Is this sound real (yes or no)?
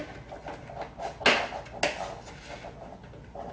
yes